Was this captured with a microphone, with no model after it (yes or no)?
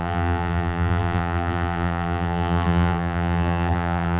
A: no